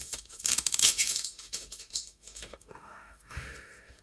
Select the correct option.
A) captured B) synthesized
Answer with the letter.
B